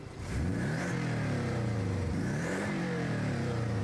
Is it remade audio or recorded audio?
remade